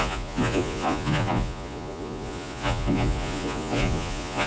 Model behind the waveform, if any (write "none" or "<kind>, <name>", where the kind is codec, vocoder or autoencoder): vocoder, Vocos